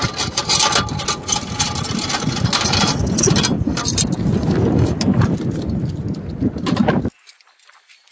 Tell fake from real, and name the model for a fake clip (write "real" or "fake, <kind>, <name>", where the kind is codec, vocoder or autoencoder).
real